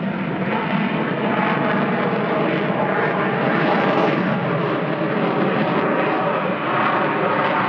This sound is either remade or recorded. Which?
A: recorded